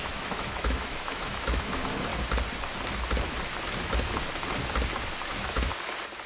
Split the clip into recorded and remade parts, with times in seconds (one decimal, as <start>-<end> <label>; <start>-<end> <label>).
0.0-2.1 remade; 2.1-5.3 recorded; 5.3-5.7 remade; 5.7-6.3 recorded